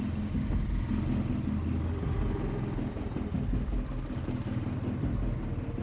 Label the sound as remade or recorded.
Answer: recorded